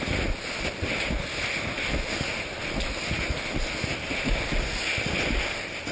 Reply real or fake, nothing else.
real